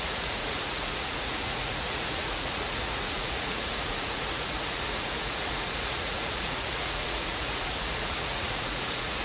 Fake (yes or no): yes